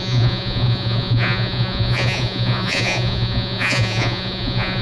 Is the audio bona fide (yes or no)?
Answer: no